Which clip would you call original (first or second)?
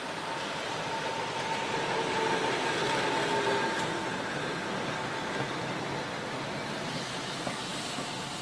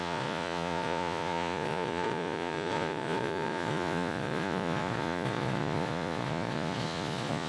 first